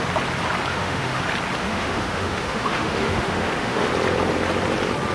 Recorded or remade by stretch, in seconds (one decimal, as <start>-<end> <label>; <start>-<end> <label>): 0.0-0.7 recorded; 0.7-1.2 remade; 1.2-1.6 recorded; 1.6-3.9 remade; 3.9-5.1 recorded